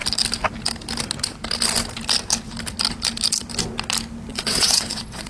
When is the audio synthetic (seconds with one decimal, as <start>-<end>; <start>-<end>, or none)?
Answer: 4.3-5.3